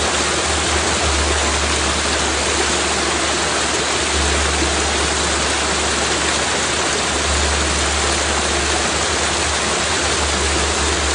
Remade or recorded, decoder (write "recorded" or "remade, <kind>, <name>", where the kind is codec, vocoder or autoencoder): recorded